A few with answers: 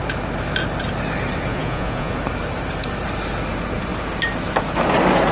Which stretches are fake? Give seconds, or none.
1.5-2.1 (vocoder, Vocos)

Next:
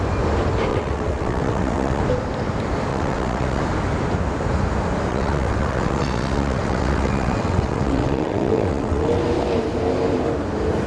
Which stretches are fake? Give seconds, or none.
0.7-2.0 (vocoder, WaveNeXt); 2.9-3.6; 5.1-9.2

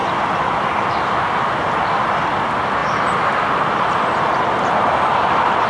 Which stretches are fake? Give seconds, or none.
none

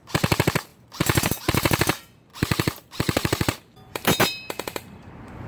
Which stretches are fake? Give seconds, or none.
0.0-5.5 (vocoder, BigVGAN v2)

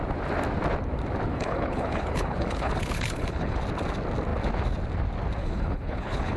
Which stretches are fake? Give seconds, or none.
1.3-3.6 (codec, HILCodec); 5.4-6.4

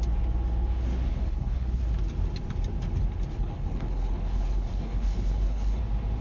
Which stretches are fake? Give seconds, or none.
1.2-1.8 (codec, HILCodec); 3.3-5.8

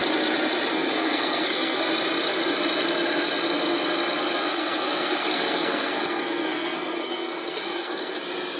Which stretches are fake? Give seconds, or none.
0.7-1.9 (codec, SNAC); 4.5-8.2

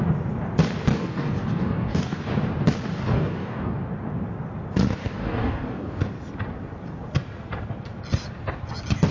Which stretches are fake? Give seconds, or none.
0.9-2.2 (codec, DAC); 2.9-3.8; 5.0-6.0